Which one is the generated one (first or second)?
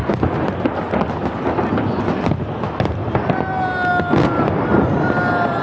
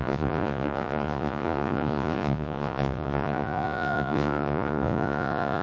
second